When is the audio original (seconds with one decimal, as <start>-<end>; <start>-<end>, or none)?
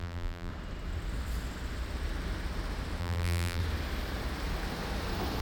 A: 0.5-3.0; 3.6-5.4